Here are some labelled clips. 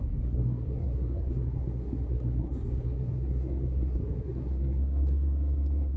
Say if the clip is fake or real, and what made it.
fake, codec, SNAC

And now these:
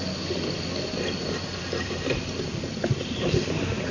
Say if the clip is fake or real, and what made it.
real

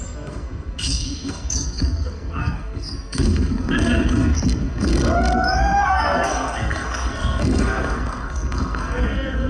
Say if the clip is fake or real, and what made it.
fake, codec, SNAC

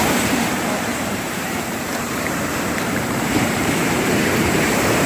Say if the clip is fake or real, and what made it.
fake, vocoder, BigVGAN v2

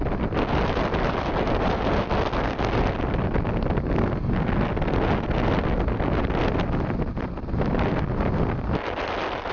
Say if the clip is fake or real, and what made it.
real